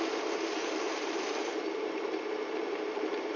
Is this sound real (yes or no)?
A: no